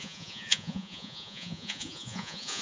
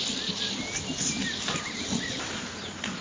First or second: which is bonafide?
second